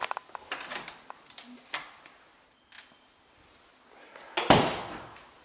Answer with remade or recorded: recorded